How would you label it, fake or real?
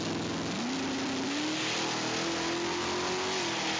real